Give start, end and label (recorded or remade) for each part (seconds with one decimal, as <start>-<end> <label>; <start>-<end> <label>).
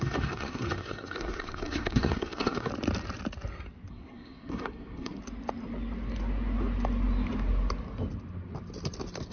0.0-2.7 remade; 2.7-3.9 recorded; 3.9-5.2 remade; 5.2-9.3 recorded